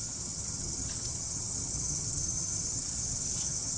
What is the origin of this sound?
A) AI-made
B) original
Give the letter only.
A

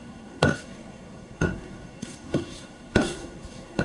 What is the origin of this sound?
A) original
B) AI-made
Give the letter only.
B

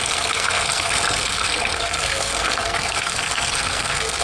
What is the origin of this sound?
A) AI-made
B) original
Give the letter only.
A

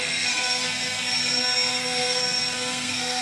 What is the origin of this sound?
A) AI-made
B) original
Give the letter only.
A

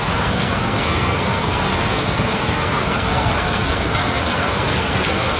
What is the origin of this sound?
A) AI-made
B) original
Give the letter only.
A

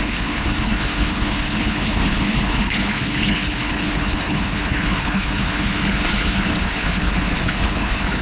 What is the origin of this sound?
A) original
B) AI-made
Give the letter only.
B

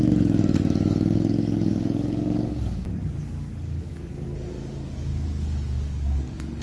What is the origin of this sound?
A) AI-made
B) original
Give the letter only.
A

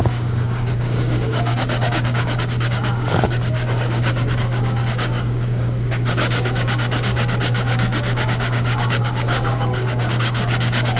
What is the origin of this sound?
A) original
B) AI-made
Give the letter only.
B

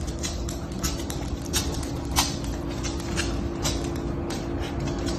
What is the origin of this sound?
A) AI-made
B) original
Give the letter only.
B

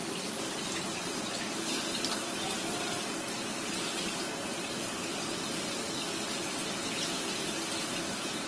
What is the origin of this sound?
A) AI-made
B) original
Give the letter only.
B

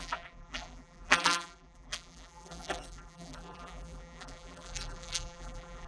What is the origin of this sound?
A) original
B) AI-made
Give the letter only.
B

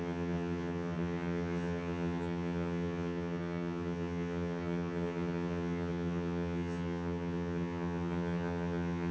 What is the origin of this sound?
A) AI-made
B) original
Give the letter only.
A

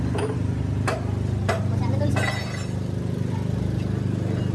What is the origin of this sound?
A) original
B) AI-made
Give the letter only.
A